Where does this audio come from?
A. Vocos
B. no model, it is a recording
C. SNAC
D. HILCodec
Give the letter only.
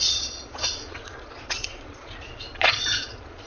A